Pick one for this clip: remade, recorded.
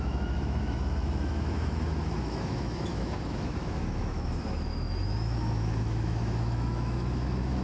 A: remade